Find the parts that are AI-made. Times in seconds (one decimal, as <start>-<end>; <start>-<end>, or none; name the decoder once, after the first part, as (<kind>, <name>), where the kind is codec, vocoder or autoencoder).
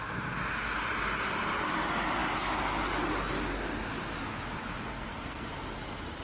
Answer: 4.9-5.5 (codec, SNAC)